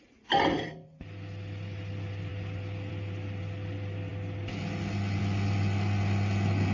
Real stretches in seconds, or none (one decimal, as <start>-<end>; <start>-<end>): 0.0-6.7